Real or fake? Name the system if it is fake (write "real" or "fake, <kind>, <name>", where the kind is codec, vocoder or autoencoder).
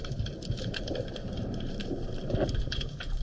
fake, vocoder, BigVGAN v2